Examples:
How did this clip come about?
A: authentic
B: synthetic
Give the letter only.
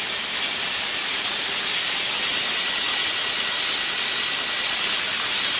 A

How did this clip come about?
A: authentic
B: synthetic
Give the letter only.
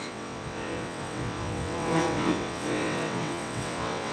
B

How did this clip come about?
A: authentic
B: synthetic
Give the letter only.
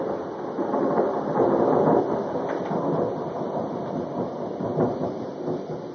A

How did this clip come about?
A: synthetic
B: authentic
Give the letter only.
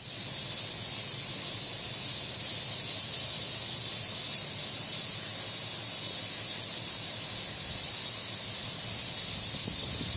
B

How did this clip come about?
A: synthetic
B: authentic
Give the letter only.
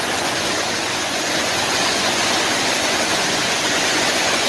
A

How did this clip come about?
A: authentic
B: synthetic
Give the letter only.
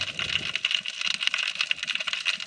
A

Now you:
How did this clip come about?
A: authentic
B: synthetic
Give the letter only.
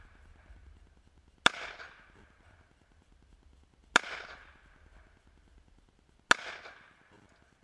A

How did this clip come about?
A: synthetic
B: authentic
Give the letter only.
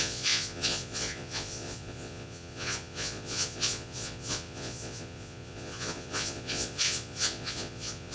A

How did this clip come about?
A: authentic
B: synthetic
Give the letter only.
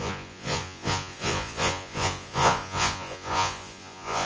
B